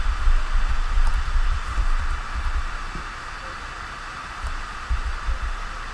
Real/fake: fake